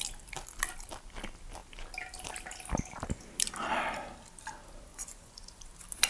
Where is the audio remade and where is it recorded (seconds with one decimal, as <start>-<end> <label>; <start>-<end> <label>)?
0.0-4.9 recorded; 4.9-5.6 remade; 5.6-6.1 recorded

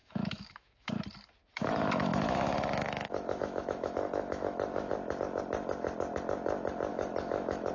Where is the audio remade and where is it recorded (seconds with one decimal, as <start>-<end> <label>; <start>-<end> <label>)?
0.0-0.9 remade; 0.9-1.4 recorded; 1.4-4.9 remade; 4.9-6.9 recorded; 6.9-7.7 remade

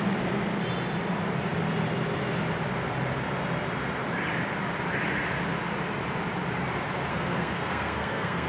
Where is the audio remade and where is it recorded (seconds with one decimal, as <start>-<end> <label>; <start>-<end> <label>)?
0.0-7.1 recorded; 7.1-8.5 remade

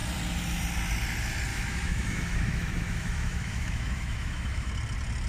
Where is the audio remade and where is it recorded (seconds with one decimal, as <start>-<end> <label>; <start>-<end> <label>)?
0.0-1.5 recorded; 1.5-4.7 remade; 4.7-5.3 recorded

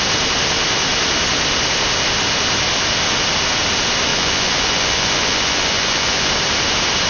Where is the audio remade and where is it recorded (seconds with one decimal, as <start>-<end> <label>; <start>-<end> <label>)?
0.0-4.1 recorded; 4.1-6.3 remade; 6.3-7.1 recorded

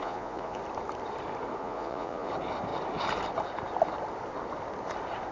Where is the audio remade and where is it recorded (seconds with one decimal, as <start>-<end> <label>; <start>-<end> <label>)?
0.0-0.6 remade; 0.6-1.6 recorded; 1.6-2.3 remade; 2.3-5.3 recorded

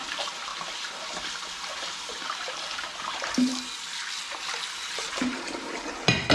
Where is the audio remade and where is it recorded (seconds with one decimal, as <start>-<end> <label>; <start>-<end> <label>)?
0.0-0.5 remade; 0.5-1.7 recorded; 1.7-3.5 remade; 3.5-4.7 recorded; 4.7-6.3 remade